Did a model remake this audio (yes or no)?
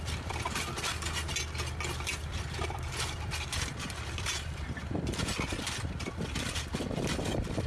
no